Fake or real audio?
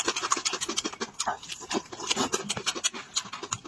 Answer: real